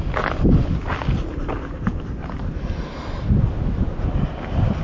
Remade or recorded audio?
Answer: recorded